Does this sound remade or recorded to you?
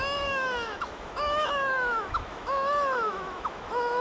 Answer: remade